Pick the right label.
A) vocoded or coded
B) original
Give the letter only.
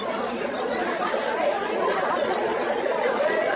A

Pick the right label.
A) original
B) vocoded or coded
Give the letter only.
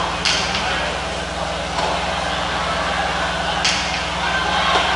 A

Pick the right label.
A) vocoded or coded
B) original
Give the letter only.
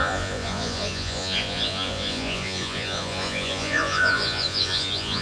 A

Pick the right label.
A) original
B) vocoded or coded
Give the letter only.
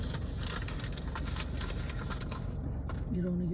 A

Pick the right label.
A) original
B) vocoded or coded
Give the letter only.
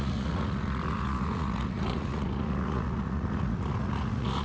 B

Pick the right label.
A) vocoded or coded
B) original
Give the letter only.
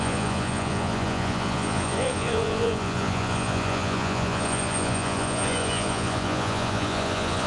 A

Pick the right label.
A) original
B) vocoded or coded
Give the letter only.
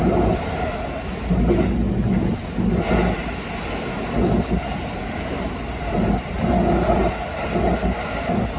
A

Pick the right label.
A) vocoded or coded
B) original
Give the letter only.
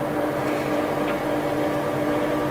B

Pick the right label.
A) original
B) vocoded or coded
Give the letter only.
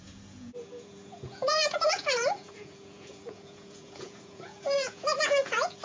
B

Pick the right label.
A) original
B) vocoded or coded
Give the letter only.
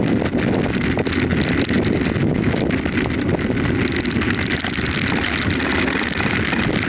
A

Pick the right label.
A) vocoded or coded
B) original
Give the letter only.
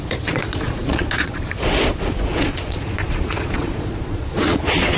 A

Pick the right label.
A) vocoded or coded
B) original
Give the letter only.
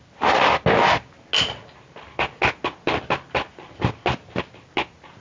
B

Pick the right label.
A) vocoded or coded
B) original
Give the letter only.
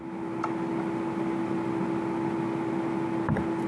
B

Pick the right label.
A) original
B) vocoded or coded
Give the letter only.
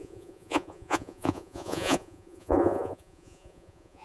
B